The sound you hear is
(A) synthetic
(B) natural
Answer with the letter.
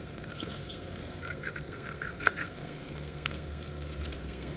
A